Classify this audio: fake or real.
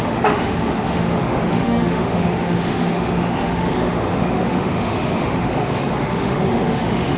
fake